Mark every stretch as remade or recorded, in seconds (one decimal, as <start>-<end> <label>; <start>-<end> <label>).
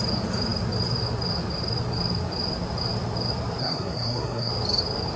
0.0-3.6 recorded; 3.6-4.5 remade; 4.5-5.2 recorded